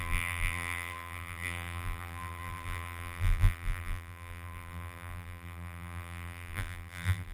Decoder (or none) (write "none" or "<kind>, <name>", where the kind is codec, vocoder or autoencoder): vocoder, BigVGAN v2